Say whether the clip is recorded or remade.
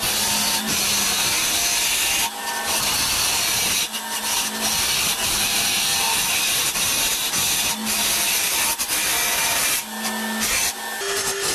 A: remade